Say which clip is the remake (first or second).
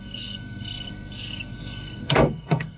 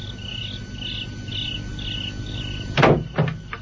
first